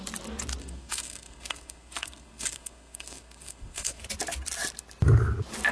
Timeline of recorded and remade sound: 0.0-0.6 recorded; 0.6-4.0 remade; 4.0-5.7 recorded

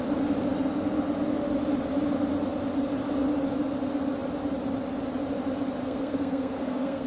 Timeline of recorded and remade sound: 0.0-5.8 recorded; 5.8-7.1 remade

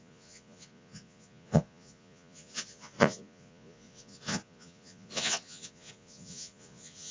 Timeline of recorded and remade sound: 0.0-7.1 remade

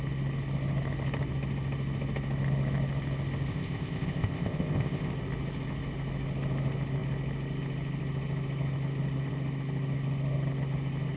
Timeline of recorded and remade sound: 0.0-3.5 recorded; 3.5-5.1 remade; 5.1-11.2 recorded